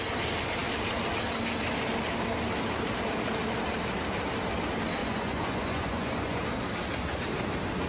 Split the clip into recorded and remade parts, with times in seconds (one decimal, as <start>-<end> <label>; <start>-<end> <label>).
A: 0.0-5.0 recorded; 5.0-6.4 remade; 6.4-7.9 recorded